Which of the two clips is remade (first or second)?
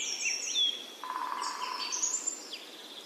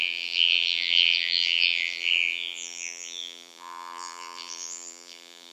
second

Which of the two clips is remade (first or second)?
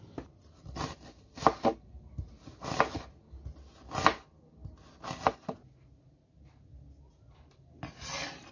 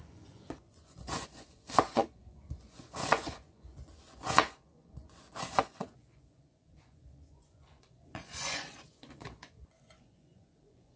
second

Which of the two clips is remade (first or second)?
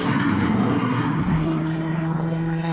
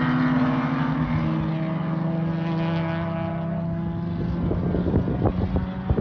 first